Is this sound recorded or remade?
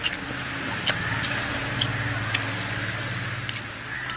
recorded